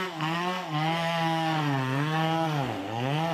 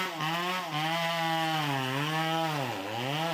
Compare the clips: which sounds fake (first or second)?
first